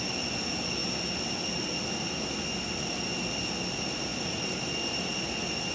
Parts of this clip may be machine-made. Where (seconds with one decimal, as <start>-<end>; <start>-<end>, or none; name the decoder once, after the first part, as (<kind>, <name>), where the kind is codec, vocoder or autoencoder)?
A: 4.1-4.7 (vocoder, BigVGAN v2)